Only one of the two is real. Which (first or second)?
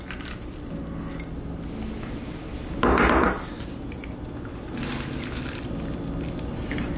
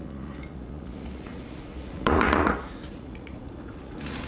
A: first